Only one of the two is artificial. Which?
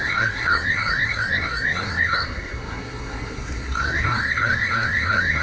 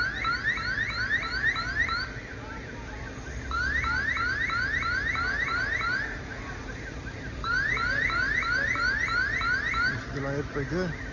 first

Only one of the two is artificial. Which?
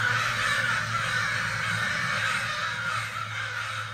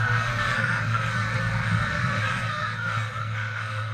second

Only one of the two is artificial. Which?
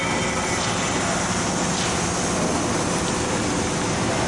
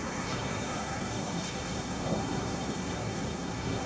second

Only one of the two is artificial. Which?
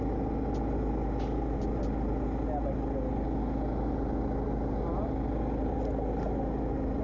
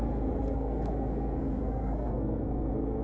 second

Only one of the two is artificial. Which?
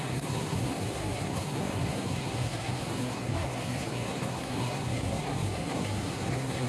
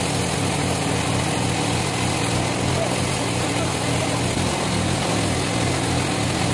first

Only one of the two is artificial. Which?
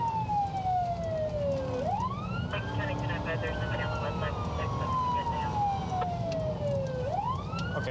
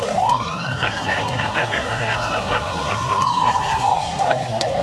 second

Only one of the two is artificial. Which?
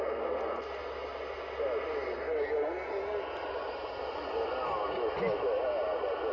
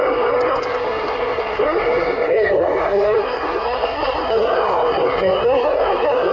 second